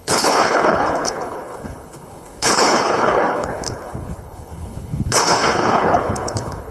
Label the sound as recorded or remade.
remade